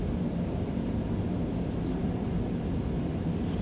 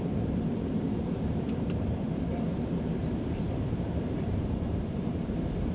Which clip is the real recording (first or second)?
first